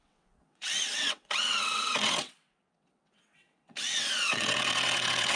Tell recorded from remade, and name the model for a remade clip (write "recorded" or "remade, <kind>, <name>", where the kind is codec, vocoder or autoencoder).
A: remade, vocoder, WaveNeXt